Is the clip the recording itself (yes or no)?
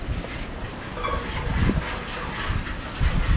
yes